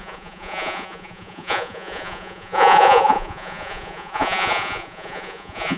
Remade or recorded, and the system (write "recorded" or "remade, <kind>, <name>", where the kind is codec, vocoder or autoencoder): remade, vocoder, Vocos